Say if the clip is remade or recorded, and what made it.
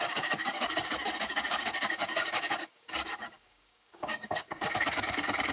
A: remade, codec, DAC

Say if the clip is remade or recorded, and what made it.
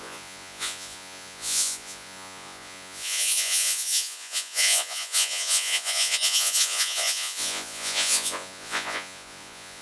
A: remade, vocoder, Vocos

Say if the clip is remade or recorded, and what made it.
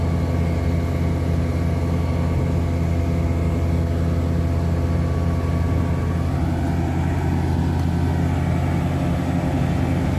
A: recorded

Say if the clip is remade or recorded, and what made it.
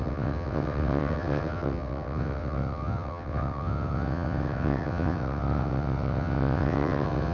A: remade, vocoder, WaveNeXt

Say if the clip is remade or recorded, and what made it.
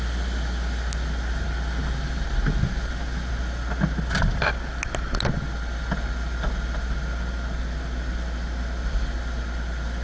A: recorded